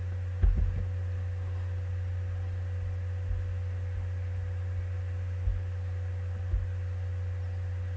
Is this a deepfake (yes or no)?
no